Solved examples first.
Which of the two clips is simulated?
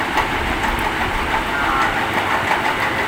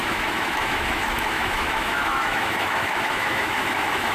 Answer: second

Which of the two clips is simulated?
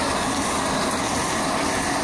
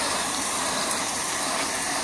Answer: second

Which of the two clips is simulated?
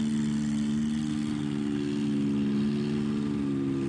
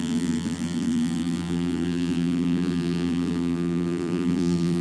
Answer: second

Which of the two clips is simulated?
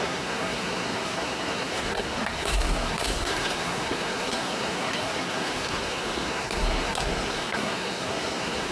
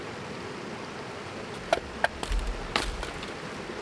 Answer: first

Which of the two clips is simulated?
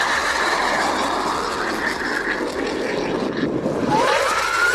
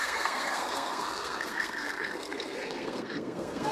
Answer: second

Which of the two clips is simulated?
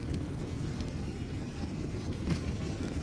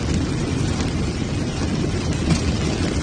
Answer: first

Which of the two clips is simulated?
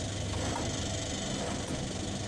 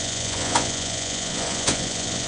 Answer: second